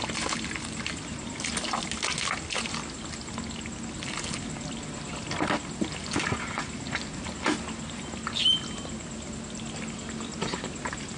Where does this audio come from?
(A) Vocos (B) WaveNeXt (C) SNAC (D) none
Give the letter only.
D